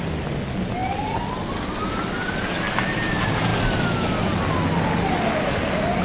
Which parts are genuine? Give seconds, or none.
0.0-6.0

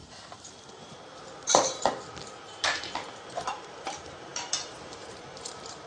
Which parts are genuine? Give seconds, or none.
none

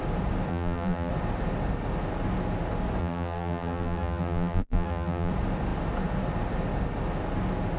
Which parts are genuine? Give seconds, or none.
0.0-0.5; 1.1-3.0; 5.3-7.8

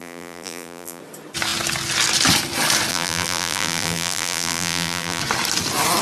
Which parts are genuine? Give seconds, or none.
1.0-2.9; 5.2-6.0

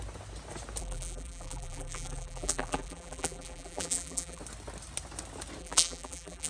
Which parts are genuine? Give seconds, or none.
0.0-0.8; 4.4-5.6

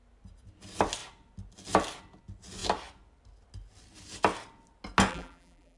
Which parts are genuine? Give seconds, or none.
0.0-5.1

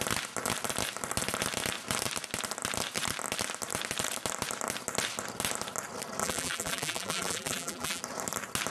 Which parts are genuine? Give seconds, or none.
0.0-6.2; 8.0-8.7